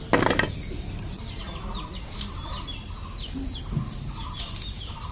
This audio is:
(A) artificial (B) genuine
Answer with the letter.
B